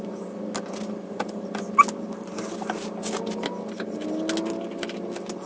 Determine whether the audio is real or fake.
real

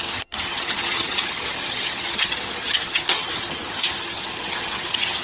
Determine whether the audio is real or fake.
fake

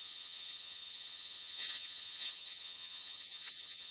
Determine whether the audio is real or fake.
fake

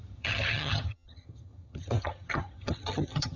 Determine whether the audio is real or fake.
fake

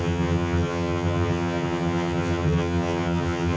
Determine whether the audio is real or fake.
fake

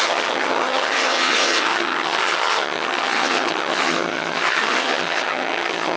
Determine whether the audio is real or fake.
fake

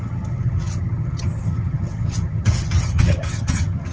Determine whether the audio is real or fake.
fake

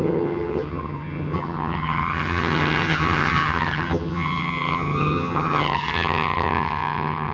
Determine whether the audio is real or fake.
fake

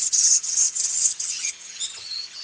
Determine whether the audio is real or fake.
fake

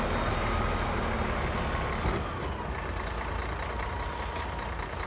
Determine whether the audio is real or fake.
real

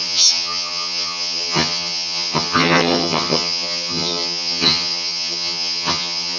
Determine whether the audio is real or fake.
fake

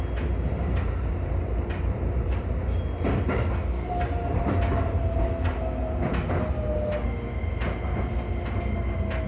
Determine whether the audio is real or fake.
real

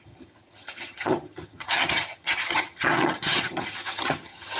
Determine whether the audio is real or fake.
fake